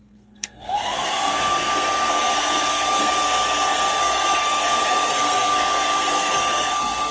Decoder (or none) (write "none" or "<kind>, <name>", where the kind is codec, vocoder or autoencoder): codec, SNAC